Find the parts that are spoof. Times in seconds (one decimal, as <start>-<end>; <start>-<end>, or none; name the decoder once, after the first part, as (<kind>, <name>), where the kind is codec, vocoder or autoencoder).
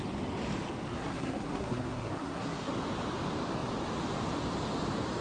0.9-2.7 (codec, SNAC)